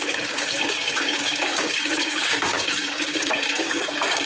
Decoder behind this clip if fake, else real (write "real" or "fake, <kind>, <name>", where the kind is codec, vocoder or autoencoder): fake, codec, DAC